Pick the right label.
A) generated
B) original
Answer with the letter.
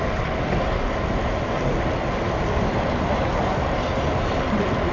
B